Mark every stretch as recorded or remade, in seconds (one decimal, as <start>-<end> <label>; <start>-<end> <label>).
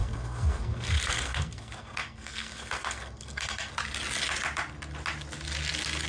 0.0-3.7 remade; 3.7-6.1 recorded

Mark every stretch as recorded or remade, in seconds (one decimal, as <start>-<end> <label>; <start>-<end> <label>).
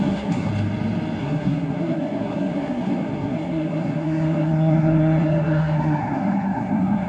0.0-0.5 remade; 0.5-1.2 recorded; 1.2-7.1 remade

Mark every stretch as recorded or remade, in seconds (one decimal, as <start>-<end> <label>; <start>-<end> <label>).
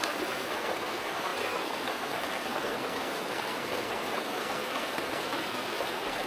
0.0-6.3 remade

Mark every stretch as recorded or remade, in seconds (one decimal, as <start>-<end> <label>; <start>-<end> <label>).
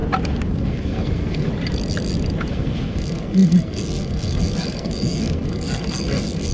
0.0-0.5 recorded; 0.5-1.5 remade; 1.5-2.5 recorded; 2.5-6.5 remade